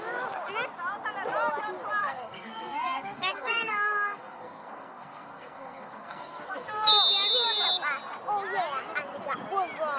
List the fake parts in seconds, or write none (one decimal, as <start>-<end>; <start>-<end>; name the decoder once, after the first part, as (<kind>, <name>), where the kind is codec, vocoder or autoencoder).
2.0-6.9 (codec, SNAC)